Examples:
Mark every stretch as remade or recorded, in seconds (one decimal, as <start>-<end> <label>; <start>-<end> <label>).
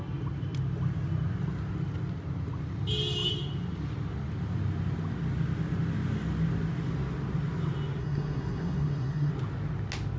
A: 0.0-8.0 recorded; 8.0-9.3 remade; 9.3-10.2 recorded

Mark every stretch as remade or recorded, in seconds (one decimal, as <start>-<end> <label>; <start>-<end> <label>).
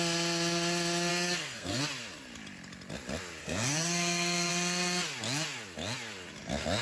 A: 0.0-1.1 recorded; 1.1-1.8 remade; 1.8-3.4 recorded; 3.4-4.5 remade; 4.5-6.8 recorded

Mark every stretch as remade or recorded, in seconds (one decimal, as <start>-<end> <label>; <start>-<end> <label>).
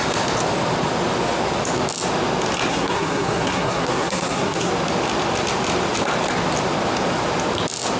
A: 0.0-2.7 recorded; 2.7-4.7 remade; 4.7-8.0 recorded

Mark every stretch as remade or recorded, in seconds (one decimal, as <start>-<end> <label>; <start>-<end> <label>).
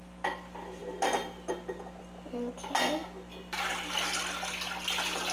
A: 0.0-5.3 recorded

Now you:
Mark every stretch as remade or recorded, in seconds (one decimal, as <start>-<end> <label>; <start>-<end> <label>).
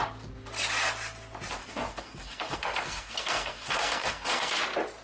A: 0.0-1.6 recorded; 1.6-4.6 remade; 4.6-5.0 recorded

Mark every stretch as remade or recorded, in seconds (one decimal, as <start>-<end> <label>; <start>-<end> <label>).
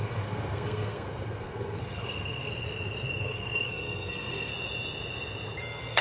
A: 0.0-2.5 remade; 2.5-3.2 recorded; 3.2-4.5 remade; 4.5-5.6 recorded; 5.6-6.0 remade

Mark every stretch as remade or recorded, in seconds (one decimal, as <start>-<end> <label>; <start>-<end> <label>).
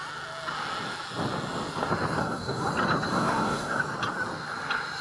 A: 0.0-2.2 recorded; 2.2-2.7 remade; 2.7-3.1 recorded; 3.1-3.8 remade; 3.8-5.0 recorded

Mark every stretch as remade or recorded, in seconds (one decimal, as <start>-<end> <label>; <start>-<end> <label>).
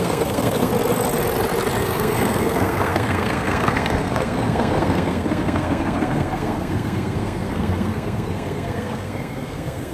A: 0.0-0.7 remade; 0.7-1.8 recorded; 1.8-9.9 remade